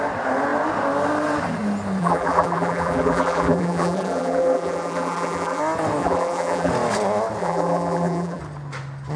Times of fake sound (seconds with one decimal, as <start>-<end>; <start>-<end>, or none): 2.0-5.6; 6.0-6.7; 7.4-8.4